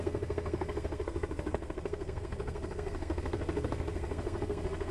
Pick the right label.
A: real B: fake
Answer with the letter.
B